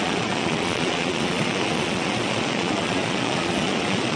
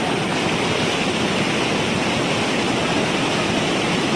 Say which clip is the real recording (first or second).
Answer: second